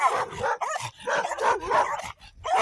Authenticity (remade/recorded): recorded